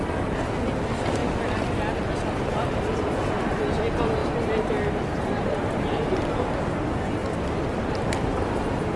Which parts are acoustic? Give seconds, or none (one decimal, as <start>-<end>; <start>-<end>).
0.0-4.2; 6.5-9.0